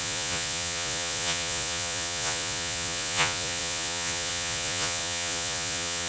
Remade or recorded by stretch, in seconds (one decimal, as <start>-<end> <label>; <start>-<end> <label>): 0.0-6.1 remade